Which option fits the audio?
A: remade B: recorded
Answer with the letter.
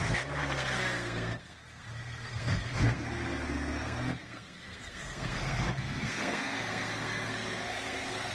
A